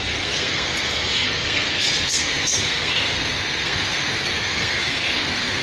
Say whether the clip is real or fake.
fake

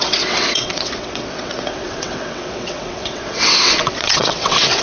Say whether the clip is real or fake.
fake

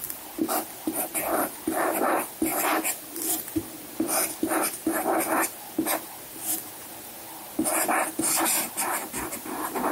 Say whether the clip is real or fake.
real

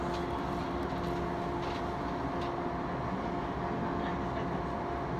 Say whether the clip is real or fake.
real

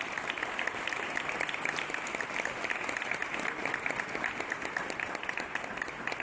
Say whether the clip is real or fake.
real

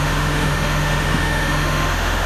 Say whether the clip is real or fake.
fake